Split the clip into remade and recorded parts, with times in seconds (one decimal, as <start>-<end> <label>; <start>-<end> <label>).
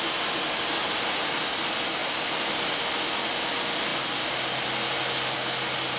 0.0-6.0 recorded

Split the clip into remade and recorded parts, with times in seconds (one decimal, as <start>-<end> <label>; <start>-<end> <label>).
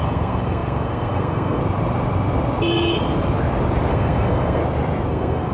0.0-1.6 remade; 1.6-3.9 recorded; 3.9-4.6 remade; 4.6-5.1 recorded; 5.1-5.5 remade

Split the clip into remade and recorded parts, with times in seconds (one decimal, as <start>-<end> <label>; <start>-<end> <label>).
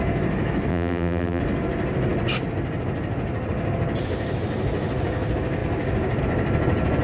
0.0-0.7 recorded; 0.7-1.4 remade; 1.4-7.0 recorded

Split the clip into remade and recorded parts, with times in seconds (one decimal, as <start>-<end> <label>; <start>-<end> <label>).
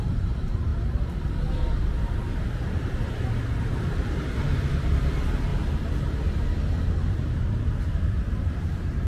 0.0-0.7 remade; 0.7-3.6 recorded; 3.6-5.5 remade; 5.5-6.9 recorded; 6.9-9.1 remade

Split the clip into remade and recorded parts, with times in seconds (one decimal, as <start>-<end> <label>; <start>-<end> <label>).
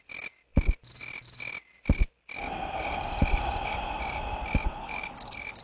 0.0-4.8 recorded; 4.8-5.6 remade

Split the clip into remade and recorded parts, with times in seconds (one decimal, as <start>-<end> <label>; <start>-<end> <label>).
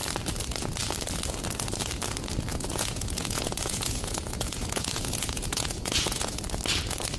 0.0-2.5 recorded; 2.5-6.4 remade; 6.4-7.2 recorded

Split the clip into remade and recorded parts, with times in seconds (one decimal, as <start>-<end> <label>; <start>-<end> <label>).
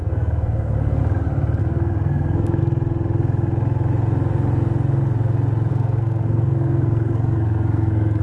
0.0-1.0 remade; 1.0-1.6 recorded; 1.6-2.6 remade; 2.6-5.7 recorded; 5.7-8.2 remade